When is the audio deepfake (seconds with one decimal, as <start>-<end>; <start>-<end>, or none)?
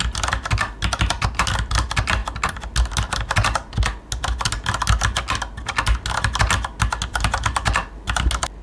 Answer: none